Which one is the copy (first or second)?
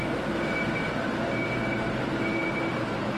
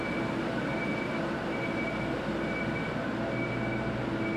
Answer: first